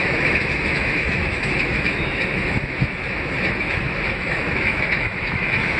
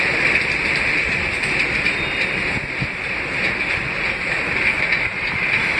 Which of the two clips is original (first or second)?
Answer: second